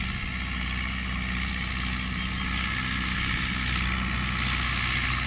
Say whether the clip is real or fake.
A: real